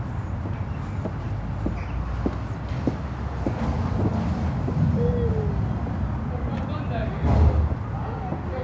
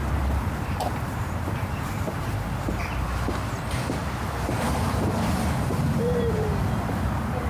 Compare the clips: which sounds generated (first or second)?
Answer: second